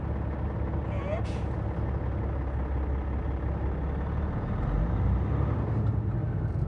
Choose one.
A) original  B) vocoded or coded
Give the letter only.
A